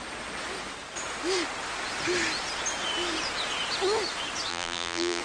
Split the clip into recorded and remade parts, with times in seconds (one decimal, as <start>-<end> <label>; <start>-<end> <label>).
0.0-4.5 recorded; 4.5-5.2 remade